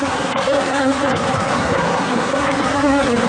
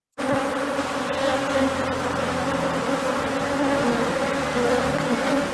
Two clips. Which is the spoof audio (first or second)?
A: first